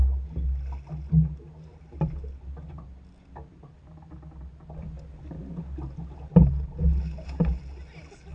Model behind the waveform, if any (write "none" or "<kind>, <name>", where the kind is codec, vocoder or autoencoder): none